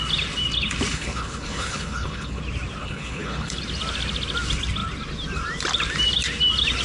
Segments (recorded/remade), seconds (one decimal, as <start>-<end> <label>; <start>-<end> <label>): 0.0-0.9 recorded; 0.9-2.4 remade; 2.4-2.8 recorded; 2.8-3.6 remade; 3.6-6.8 recorded